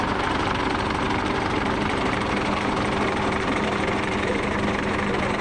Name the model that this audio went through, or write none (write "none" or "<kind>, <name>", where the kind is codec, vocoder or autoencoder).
vocoder, BigVGAN v2